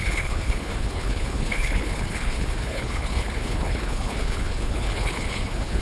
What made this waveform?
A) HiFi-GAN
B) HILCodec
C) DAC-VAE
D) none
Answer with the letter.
B